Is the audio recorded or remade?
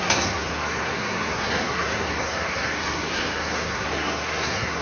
remade